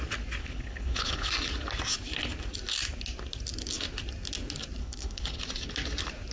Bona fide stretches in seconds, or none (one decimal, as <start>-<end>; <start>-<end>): 0.0-0.4; 1.3-4.8; 5.4-6.3